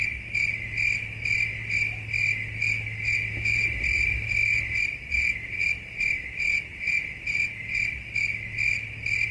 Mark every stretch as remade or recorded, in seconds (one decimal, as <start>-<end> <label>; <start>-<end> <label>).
0.0-9.3 recorded